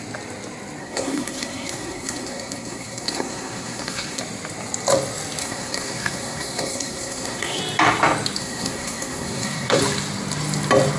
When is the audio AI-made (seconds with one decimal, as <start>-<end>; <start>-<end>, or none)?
0.8-4.2; 5.4-7.6; 8.4-9.8